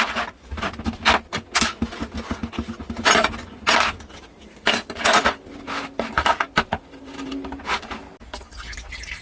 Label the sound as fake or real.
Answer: real